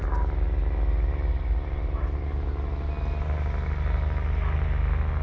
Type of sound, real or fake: real